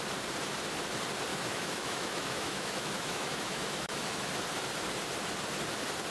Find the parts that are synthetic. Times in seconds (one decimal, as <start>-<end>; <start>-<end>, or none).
1.3-4.3

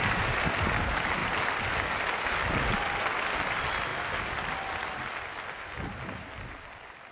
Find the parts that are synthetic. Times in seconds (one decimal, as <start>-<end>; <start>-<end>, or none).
none

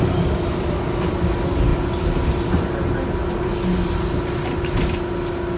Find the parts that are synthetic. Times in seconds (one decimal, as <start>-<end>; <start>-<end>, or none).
none

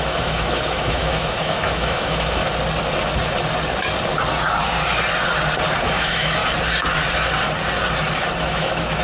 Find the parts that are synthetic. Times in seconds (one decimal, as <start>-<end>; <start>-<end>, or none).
0.0-2.4; 5.8-6.4; 8.4-9.0

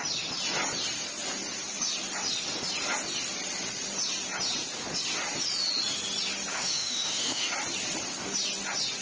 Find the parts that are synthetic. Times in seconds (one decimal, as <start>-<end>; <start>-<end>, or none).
6.5-7.5